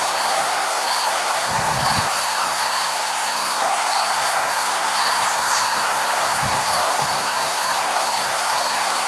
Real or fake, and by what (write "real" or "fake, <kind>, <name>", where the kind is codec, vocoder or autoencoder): fake, codec, SNAC